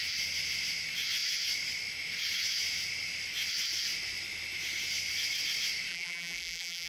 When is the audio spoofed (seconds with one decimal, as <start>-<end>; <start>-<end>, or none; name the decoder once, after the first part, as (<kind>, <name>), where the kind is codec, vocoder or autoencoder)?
5.9-6.9 (vocoder, BigVGAN v2)